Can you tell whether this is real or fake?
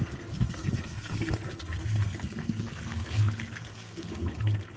fake